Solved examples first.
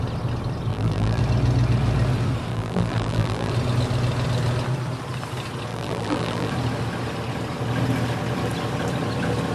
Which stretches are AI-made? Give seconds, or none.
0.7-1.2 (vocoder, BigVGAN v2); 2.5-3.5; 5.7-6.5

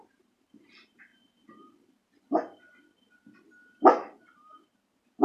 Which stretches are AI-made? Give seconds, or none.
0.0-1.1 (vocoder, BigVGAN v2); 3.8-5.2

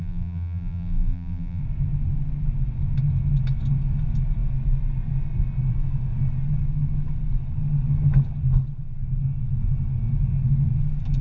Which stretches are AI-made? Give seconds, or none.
0.0-1.6 (vocoder, BigVGAN v2)

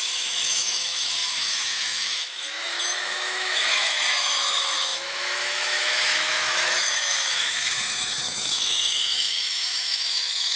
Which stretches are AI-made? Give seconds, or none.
0.0-10.6 (autoencoder, DAC-VAE)

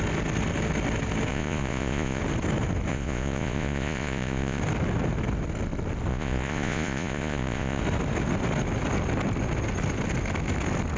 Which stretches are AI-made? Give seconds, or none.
1.3-2.2 (vocoder, Vocos); 2.9-4.6; 6.1-7.8

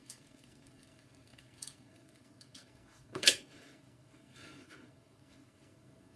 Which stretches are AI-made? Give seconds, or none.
0.0-6.2 (codec, SNAC)